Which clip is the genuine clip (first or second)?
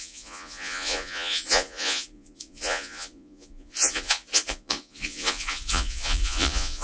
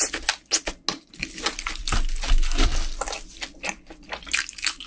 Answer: second